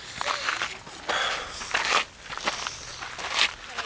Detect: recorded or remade recorded